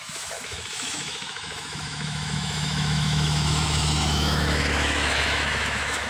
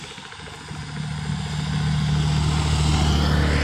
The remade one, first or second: first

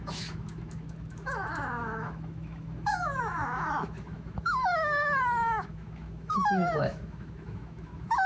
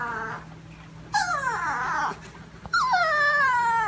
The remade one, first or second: first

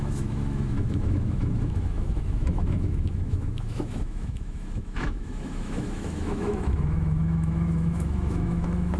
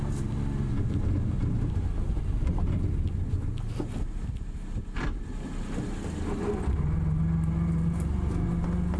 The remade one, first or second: first